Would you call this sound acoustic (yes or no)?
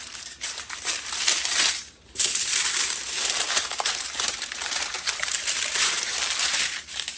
no